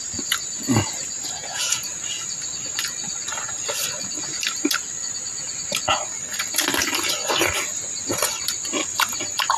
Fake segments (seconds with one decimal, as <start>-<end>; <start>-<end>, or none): 1.4-2.0